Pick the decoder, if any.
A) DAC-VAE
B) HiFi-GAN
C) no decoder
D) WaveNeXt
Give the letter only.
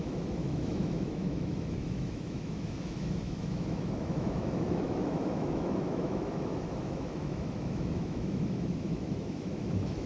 A